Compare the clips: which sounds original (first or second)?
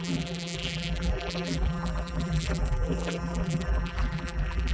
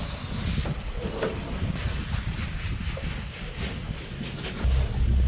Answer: second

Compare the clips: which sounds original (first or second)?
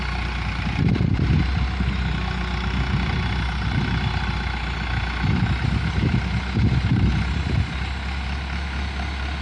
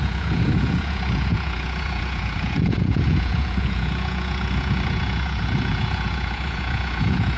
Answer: first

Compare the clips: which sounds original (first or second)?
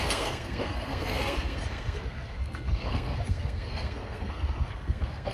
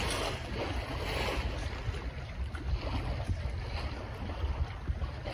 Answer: second